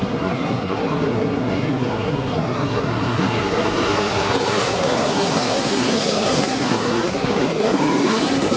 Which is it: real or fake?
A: fake